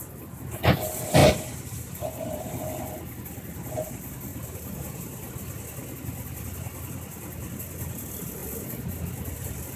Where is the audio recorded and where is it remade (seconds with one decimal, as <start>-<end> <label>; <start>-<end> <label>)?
0.0-1.2 recorded; 1.2-2.6 remade; 2.6-4.3 recorded; 4.3-5.3 remade; 5.3-9.8 recorded